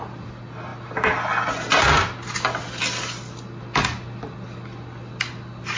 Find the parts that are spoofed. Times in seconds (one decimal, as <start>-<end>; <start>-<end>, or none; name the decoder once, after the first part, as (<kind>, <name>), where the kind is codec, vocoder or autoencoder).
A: none